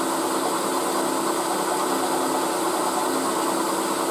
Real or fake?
real